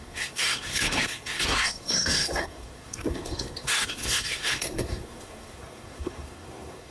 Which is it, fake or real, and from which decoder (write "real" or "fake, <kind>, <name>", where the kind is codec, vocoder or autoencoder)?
fake, codec, SNAC